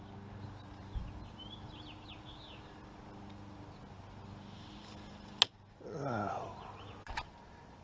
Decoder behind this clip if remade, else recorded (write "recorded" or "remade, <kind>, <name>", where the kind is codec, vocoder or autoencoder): recorded